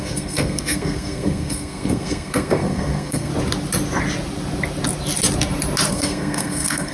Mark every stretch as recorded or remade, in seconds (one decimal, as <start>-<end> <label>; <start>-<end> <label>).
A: 0.0-3.3 remade; 3.3-5.9 recorded; 5.9-6.9 remade